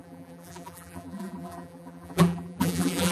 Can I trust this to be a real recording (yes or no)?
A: no